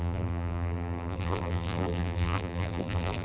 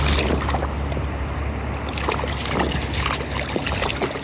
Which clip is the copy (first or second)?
first